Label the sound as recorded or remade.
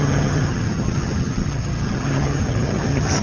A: remade